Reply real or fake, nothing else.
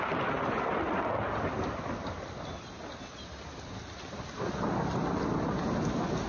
real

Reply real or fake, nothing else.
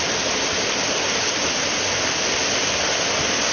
real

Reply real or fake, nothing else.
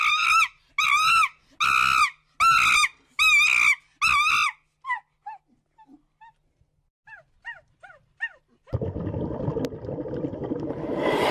real